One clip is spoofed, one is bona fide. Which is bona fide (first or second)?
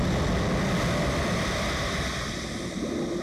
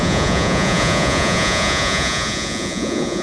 first